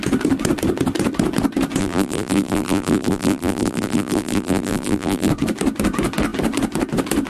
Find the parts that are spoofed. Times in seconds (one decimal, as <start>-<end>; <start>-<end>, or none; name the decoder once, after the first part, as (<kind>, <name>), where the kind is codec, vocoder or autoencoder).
1.8-5.3 (vocoder, BigVGAN v2)

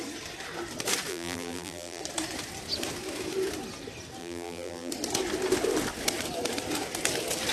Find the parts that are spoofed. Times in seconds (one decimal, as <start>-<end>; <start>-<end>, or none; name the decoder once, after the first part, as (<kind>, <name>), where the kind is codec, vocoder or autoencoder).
1.1-2.0 (vocoder, BigVGAN v2); 4.2-4.9